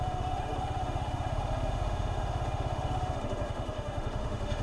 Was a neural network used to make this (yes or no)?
yes